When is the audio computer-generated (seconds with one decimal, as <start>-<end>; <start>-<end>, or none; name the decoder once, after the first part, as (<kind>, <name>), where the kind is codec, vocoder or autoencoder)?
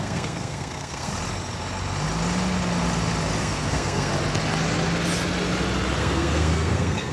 0.0-1.1 (codec, SNAC); 3.4-4.1; 6.0-7.1